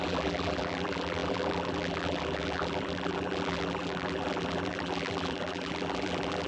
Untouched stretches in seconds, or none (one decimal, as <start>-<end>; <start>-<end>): none